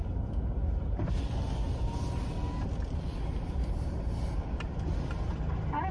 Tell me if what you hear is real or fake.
real